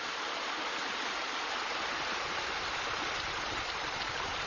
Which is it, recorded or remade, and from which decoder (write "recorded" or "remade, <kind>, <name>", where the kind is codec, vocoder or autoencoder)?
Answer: remade, vocoder, BigVGAN v2